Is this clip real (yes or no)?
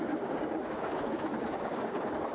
no